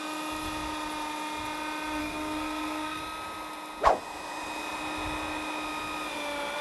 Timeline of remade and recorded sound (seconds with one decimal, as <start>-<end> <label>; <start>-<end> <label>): 0.0-2.0 recorded; 2.0-3.0 remade; 3.0-6.6 recorded